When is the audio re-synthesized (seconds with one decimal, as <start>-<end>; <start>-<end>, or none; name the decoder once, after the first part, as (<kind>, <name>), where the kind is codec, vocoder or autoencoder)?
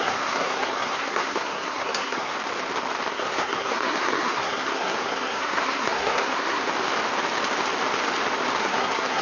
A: 0.0-2.3 (codec, SNAC); 3.1-6.6; 8.6-9.2